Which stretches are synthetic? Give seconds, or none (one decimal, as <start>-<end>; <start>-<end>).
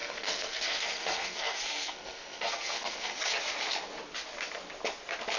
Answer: 0.0-3.2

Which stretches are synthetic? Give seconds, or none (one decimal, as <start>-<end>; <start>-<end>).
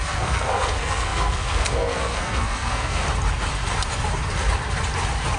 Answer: 0.0-3.0